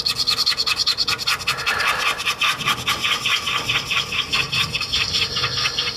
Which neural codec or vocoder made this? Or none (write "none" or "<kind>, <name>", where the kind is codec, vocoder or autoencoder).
none